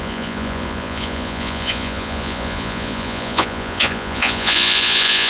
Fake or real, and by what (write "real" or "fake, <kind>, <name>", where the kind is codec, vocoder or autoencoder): fake, vocoder, Vocos